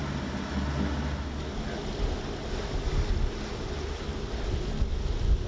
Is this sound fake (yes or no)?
no